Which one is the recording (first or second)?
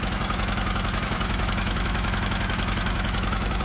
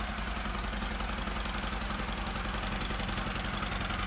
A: second